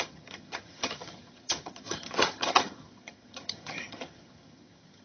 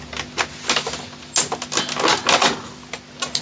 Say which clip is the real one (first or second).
second